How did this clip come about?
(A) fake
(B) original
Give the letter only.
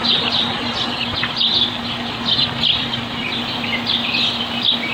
B